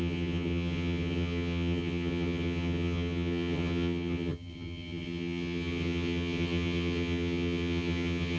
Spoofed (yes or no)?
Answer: yes